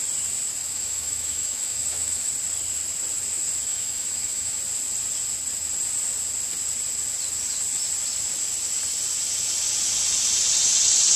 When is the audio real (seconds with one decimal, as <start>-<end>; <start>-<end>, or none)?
0.0-0.6; 2.3-3.7; 4.6-11.2

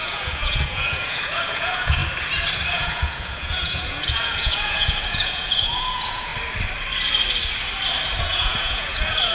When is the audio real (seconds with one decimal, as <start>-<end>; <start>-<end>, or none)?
2.0-2.7; 6.3-8.2

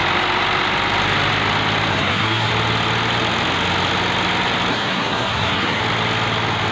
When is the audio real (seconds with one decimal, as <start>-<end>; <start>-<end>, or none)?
0.0-1.9; 2.5-4.7; 5.8-6.7